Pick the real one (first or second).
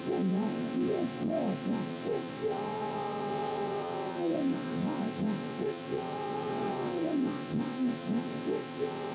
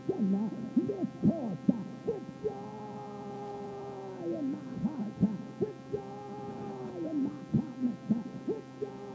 second